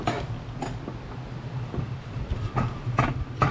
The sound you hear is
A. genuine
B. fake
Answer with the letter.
A